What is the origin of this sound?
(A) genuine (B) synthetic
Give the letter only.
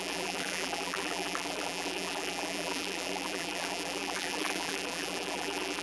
B